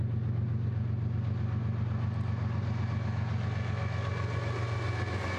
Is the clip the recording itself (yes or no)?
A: yes